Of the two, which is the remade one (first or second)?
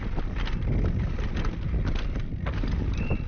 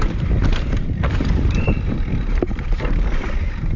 second